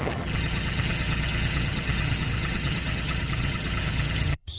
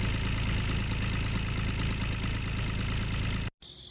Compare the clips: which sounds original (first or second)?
second